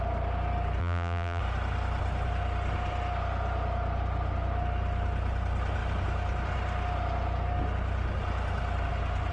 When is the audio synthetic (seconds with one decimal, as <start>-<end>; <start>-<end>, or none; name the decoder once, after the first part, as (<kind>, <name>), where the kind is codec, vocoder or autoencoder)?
0.8-1.4 (vocoder, BigVGAN v2)